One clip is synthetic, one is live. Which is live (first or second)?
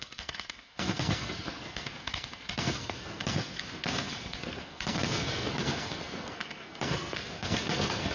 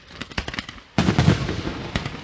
second